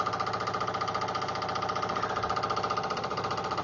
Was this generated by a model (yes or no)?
no